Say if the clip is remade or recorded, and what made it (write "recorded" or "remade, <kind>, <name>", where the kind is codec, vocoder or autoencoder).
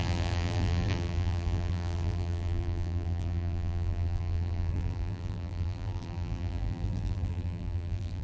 remade, vocoder, BigVGAN v2